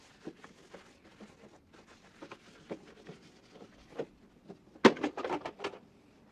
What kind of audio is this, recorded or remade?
recorded